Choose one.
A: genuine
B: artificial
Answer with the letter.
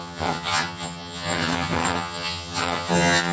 B